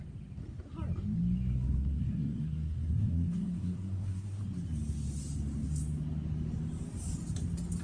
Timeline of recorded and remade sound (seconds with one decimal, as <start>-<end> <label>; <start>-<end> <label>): 0.0-1.5 recorded; 1.5-4.4 remade; 4.4-7.8 recorded